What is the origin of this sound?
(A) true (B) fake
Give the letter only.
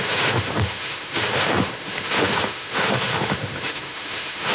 B